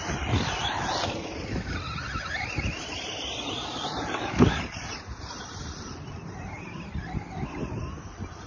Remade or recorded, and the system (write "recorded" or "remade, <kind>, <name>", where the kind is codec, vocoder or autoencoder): recorded